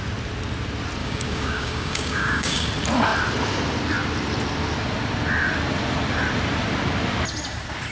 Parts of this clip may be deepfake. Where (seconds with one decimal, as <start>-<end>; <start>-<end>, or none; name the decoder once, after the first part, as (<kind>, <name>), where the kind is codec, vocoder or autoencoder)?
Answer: 1.0-2.7 (codec, DAC)